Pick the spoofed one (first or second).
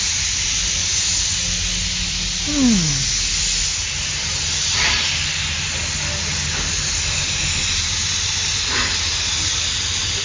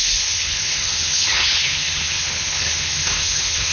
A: second